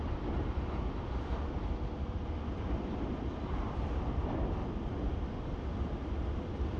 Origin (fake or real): fake